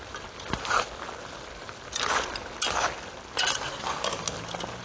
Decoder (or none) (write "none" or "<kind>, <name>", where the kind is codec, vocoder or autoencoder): none